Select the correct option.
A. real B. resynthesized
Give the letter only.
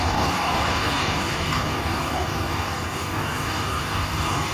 B